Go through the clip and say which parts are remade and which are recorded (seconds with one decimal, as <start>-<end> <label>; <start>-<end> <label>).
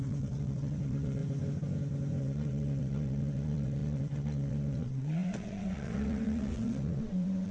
0.0-1.2 remade; 1.2-2.2 recorded; 2.2-7.5 remade